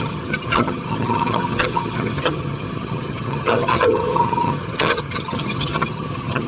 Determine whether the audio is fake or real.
fake